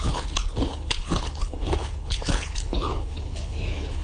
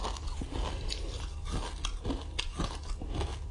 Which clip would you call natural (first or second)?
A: second